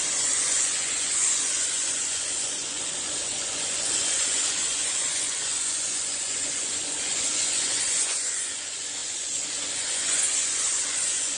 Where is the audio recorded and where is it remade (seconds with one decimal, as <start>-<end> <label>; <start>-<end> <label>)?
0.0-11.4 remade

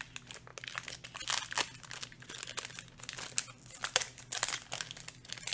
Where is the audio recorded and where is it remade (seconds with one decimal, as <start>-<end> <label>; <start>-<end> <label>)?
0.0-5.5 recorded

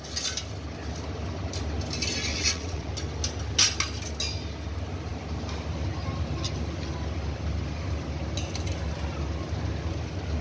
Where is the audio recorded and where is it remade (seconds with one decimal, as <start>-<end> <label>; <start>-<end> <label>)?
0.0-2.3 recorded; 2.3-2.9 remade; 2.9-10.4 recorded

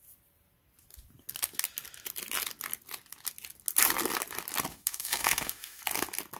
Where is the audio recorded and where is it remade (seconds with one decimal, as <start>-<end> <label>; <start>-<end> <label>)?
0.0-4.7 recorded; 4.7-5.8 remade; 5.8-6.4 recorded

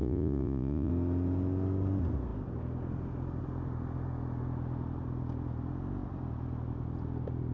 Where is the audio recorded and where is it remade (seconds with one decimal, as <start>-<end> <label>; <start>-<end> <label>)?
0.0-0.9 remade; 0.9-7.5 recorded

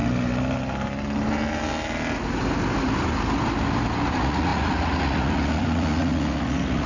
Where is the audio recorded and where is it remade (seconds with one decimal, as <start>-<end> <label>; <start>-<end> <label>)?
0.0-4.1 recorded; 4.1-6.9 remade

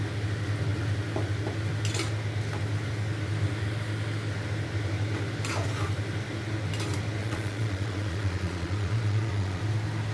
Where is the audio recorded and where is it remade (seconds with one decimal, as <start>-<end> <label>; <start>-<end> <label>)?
0.0-7.2 recorded; 7.2-9.6 remade; 9.6-10.1 recorded

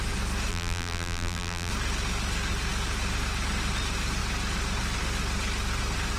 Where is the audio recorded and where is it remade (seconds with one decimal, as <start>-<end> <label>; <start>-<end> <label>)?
0.0-0.5 recorded; 0.5-1.7 remade; 1.7-6.2 recorded